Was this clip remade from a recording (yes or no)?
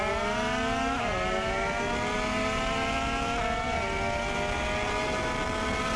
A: no